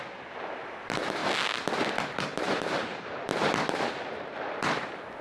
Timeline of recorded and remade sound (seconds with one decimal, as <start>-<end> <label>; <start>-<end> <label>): 0.0-1.2 remade; 1.2-2.0 recorded; 2.0-3.3 remade; 3.3-4.0 recorded; 4.0-5.2 remade